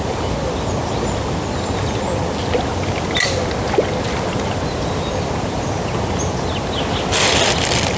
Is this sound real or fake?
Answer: real